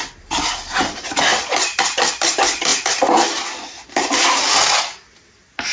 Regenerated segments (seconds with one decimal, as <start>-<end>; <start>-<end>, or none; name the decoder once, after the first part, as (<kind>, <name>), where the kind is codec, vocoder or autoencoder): none